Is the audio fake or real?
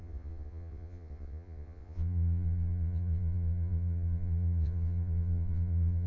fake